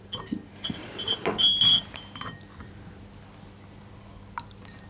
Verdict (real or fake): real